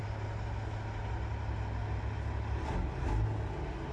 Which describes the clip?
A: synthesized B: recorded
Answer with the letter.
B